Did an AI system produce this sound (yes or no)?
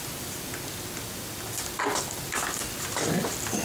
no